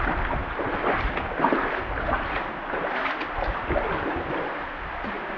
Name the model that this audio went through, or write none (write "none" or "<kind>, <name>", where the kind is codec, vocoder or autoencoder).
none